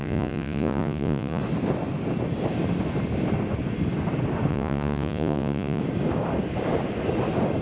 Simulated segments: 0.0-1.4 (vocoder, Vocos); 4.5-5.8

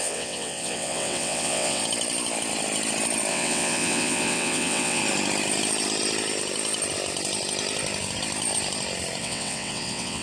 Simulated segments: 0.0-1.8 (vocoder, WaveNeXt); 3.3-5.0; 9.2-10.2